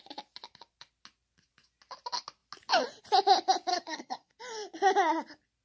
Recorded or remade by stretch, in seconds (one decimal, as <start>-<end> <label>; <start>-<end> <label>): 0.0-3.7 recorded; 3.7-4.3 remade; 4.3-5.6 recorded